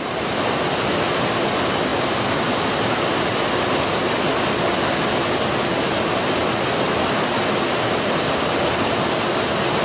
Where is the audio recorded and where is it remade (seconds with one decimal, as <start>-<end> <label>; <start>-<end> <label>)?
0.0-1.9 recorded; 1.9-2.7 remade; 2.7-9.8 recorded